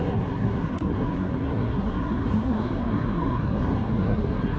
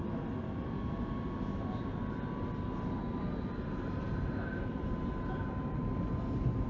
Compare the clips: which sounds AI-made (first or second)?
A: first